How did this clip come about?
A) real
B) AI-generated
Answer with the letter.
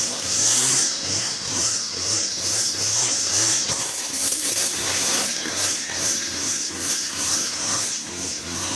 B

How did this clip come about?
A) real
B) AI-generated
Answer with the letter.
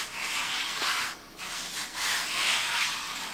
B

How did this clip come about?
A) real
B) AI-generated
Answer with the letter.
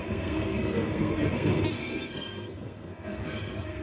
B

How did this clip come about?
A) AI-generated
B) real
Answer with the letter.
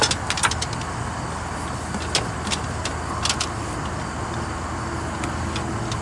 B